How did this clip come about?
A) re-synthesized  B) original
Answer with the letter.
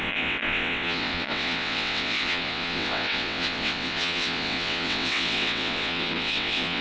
A